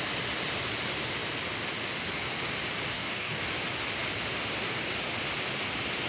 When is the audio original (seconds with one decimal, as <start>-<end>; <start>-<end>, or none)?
0.0-2.9; 3.4-6.1